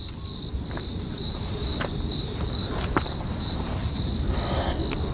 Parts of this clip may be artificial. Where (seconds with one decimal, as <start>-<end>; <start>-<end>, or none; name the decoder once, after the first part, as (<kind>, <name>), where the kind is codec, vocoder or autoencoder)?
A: 0.9-4.0 (vocoder, BigVGAN v2)